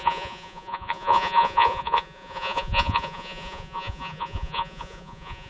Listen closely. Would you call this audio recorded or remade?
remade